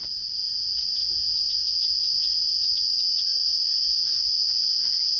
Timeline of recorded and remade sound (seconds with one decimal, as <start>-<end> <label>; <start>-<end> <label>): 0.0-1.0 recorded; 1.0-2.7 remade; 2.7-3.4 recorded; 3.4-5.2 remade

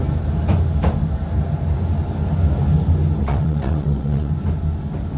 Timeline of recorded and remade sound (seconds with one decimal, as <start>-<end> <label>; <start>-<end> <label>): 0.0-3.2 recorded; 3.2-4.3 remade; 4.3-5.2 recorded

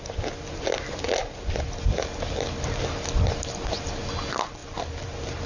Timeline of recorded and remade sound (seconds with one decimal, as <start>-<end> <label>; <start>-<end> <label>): 0.0-5.5 recorded

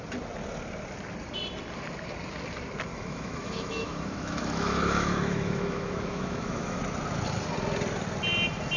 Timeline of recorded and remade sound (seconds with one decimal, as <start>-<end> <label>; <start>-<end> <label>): 0.0-2.9 recorded; 2.9-6.8 remade; 6.8-8.8 recorded